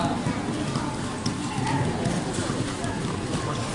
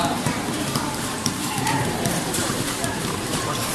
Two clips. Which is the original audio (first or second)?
first